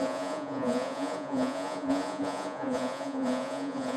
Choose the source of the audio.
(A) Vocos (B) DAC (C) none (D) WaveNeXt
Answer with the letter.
A